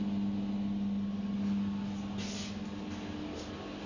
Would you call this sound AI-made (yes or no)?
no